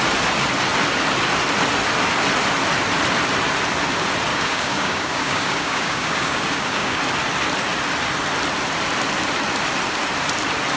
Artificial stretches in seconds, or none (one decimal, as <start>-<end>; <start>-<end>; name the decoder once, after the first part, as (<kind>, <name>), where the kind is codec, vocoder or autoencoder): 4.3-7.0 (codec, DAC)